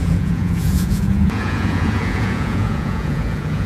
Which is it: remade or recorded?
remade